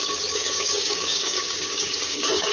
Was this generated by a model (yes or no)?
yes